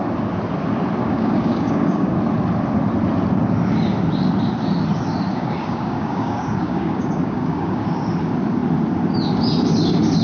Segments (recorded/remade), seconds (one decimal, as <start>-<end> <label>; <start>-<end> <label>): 0.0-1.0 recorded; 1.0-2.2 remade; 2.2-5.3 recorded; 5.3-7.8 remade; 7.8-10.2 recorded